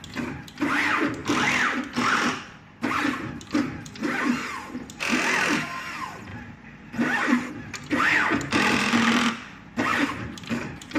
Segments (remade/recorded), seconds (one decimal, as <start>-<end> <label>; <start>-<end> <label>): 0.0-6.3 recorded; 6.3-7.5 remade; 7.5-9.9 recorded; 9.9-11.0 remade